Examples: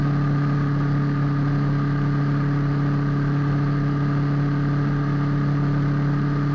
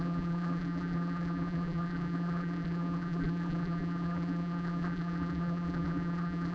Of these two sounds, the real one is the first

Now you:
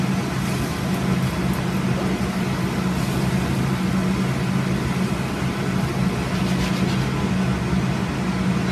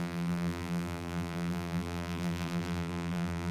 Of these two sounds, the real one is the first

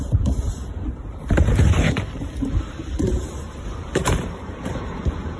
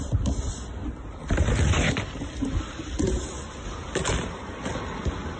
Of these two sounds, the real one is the second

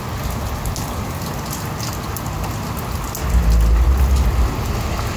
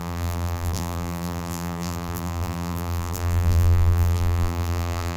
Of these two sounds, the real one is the first